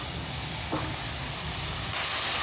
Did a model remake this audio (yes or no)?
no